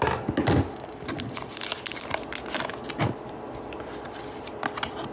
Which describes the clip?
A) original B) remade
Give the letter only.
A